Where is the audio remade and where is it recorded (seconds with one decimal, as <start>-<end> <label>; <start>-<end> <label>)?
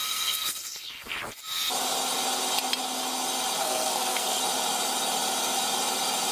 0.0-1.2 remade; 1.2-3.6 recorded; 3.6-4.4 remade; 4.4-6.3 recorded